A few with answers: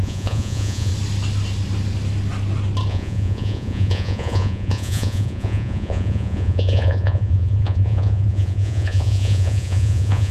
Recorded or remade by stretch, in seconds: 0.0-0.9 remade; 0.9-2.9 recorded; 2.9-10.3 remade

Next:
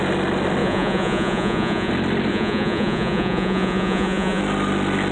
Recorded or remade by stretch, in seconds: 0.0-0.6 recorded; 0.6-1.9 remade; 1.9-2.3 recorded; 2.3-4.4 remade; 4.4-5.1 recorded

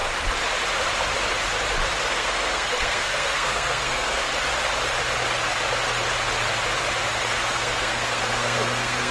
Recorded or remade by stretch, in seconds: 0.0-2.0 recorded; 2.0-4.3 remade; 4.3-7.4 recorded; 7.4-9.1 remade

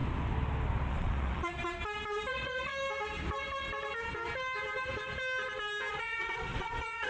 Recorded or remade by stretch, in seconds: 0.0-0.9 recorded; 0.9-1.6 remade; 1.6-2.3 recorded; 2.3-2.7 remade; 2.7-5.9 recorded; 5.9-7.1 remade

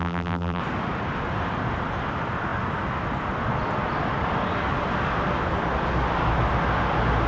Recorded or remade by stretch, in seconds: 0.0-0.6 remade; 0.6-7.3 recorded

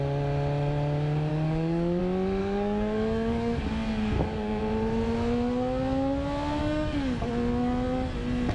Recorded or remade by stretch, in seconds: 0.0-1.3 recorded; 1.3-2.0 remade; 2.0-2.4 recorded; 2.4-4.6 remade; 4.6-6.6 recorded; 6.6-7.3 remade; 7.3-8.5 recorded

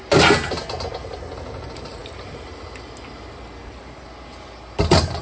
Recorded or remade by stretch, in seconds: 0.0-5.2 recorded

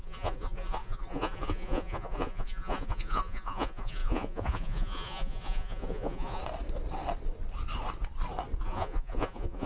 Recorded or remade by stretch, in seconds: 0.0-6.4 remade; 6.4-8.6 recorded; 8.6-9.7 remade